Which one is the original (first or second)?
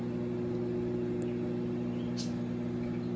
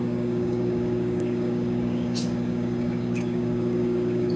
first